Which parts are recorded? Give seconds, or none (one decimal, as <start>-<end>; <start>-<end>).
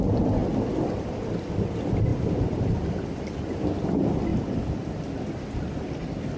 0.0-2.1; 2.7-4.3; 5.0-6.4